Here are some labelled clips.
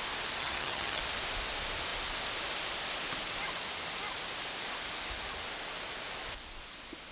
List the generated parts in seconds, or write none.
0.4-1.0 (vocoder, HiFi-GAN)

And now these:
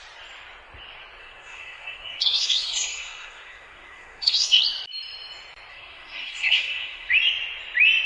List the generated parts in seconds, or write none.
1.2-4.6 (codec, SNAC); 5.7-7.1

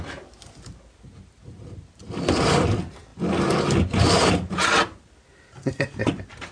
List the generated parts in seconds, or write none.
none

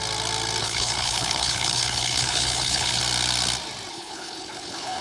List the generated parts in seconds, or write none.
0.6-3.0 (codec, HILCodec); 3.9-5.0

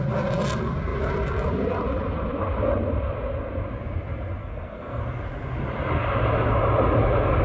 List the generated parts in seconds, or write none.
4.4-5.0 (codec, SNAC)

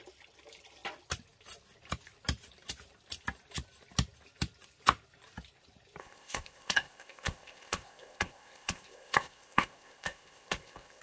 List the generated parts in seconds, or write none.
6.0-11.0 (codec, ZipCodec)

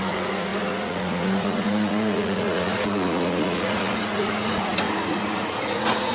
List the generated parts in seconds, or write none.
0.0-6.1 (vocoder, Vocos)